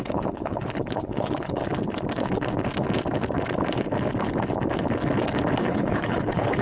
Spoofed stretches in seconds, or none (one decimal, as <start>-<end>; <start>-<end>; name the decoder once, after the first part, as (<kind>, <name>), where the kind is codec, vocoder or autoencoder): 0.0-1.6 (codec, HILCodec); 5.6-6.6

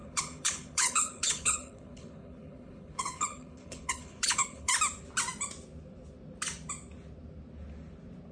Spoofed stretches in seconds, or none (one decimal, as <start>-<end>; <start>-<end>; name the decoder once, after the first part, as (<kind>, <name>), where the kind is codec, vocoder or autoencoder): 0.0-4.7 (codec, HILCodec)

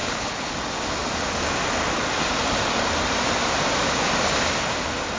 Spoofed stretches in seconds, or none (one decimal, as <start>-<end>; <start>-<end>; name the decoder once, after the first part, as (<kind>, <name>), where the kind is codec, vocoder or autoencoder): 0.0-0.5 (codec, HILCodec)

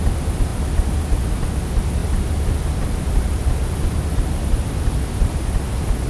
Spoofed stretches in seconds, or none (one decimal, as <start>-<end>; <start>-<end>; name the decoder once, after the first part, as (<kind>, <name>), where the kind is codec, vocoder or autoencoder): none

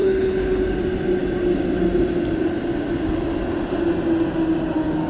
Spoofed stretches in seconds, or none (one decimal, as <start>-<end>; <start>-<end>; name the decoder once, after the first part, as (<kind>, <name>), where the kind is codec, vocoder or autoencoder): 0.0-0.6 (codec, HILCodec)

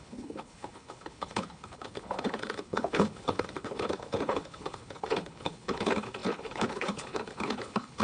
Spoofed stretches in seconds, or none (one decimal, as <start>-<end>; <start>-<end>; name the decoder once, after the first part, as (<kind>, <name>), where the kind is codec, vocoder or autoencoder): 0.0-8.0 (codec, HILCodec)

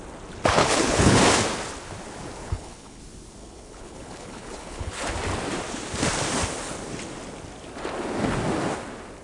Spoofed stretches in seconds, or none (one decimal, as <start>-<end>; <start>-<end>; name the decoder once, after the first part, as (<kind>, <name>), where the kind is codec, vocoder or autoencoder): 0.6-1.2 (codec, HILCodec); 2.4-3.0; 3.4-5.1